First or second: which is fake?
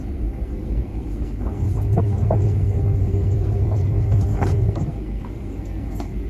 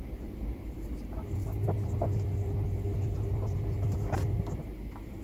first